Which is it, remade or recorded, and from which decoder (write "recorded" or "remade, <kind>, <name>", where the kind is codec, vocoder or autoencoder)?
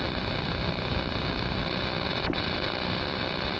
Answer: recorded